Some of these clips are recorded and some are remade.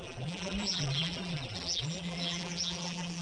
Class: remade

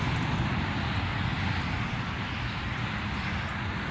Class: recorded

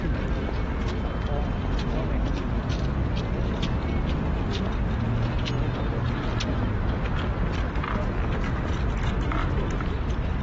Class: recorded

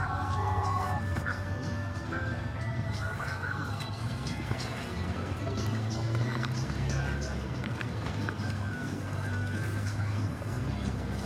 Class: remade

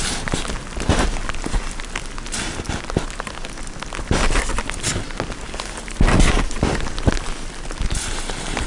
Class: recorded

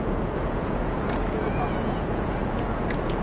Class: remade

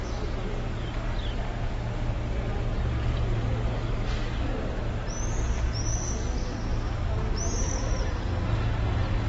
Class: recorded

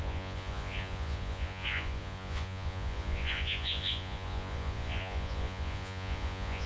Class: remade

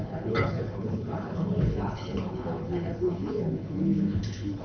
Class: remade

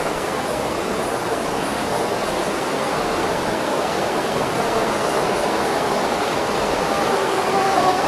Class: remade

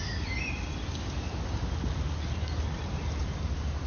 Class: recorded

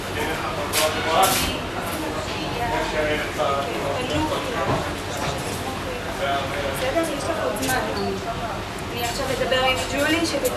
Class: recorded